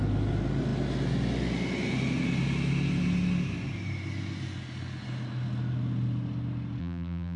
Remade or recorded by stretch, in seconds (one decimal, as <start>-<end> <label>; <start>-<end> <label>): 0.0-6.8 recorded; 6.8-7.4 remade